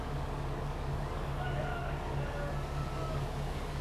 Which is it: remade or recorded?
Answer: remade